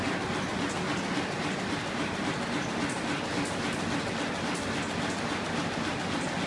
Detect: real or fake real